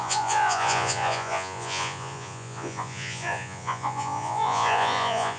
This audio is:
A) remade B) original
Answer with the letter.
A